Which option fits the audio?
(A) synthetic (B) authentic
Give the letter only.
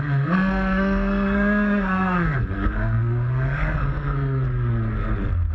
A